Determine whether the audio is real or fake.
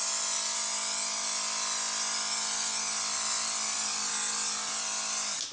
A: real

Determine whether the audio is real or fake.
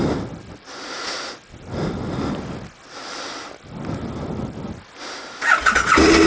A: real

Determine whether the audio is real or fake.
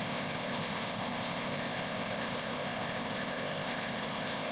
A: fake